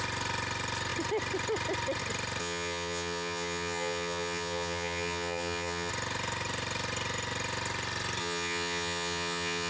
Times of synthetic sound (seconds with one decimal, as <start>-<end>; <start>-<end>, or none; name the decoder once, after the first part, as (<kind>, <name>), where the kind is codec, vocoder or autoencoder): 2.4-5.9 (vocoder, HiFi-GAN); 8.2-9.7